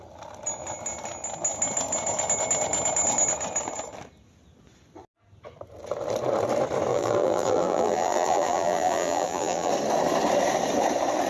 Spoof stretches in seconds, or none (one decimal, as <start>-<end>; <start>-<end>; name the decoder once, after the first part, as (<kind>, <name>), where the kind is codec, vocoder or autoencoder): 6.9-9.7 (vocoder, BigVGAN v2)